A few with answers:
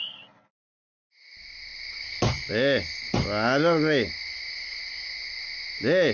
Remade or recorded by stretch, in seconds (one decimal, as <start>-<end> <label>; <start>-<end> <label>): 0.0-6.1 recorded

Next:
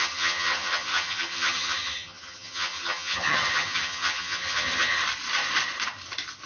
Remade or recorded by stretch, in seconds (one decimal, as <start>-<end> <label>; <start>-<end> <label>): 0.0-5.0 remade; 5.0-6.5 recorded

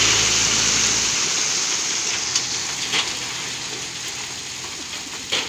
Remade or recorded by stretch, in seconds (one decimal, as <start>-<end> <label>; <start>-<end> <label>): 0.0-5.5 recorded

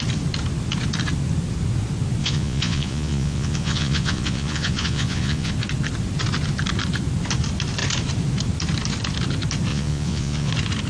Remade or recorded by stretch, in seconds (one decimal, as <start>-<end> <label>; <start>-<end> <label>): 0.0-2.2 recorded; 2.2-5.5 remade; 5.5-9.7 recorded; 9.7-10.5 remade; 10.5-10.9 recorded

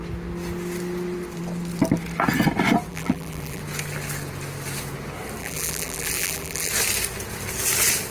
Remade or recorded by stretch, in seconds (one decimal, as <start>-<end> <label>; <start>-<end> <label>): 0.0-2.9 recorded; 2.9-3.6 remade; 3.6-5.4 recorded; 5.4-6.7 remade; 6.7-8.1 recorded

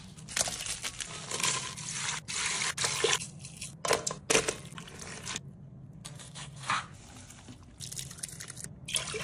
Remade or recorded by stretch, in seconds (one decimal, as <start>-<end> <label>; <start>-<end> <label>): 0.0-6.0 recorded; 6.0-6.8 remade; 6.8-9.2 recorded